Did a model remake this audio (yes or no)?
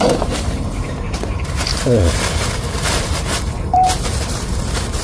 yes